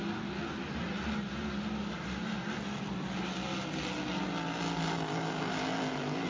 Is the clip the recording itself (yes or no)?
yes